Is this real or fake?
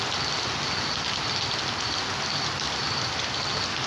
real